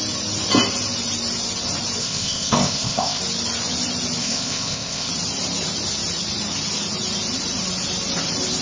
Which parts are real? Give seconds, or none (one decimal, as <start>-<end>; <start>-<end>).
0.0-2.0; 3.2-4.2; 5.1-8.6